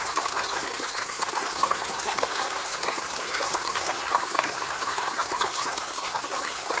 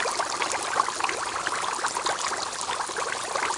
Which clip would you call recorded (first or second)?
second